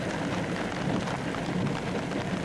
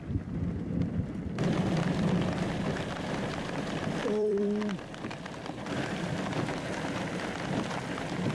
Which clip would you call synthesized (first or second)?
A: second